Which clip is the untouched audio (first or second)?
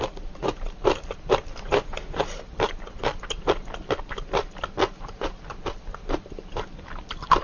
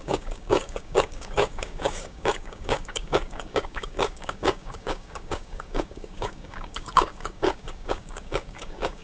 first